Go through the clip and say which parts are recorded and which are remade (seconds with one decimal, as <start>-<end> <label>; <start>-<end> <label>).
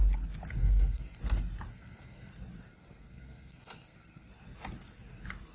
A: 0.0-0.6 recorded; 0.6-1.2 remade; 1.2-1.7 recorded; 1.7-2.3 remade; 2.3-2.7 recorded; 2.7-4.3 remade; 4.3-5.5 recorded